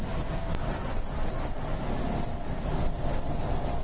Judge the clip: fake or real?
real